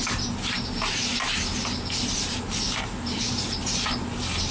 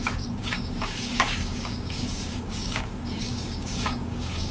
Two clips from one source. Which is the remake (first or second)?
second